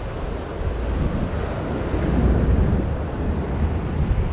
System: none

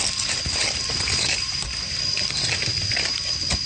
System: none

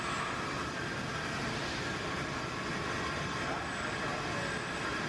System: none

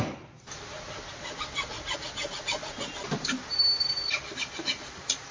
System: none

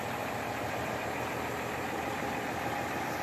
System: none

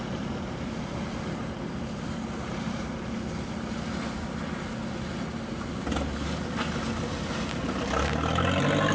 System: none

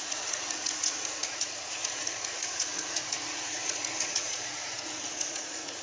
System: vocoder, Vocos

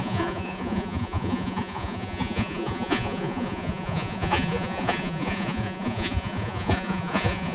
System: vocoder, Vocos